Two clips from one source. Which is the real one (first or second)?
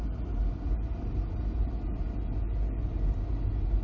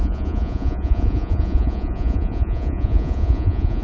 first